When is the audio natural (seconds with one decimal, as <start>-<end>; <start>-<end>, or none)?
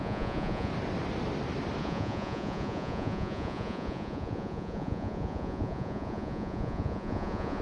0.7-1.8